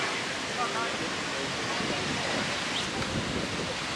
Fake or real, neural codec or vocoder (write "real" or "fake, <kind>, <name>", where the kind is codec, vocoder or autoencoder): real